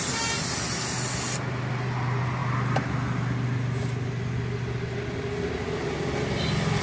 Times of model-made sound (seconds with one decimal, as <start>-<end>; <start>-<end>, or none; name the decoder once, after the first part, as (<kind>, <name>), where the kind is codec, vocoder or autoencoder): none